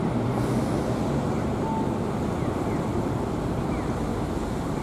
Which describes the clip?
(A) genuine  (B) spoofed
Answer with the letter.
A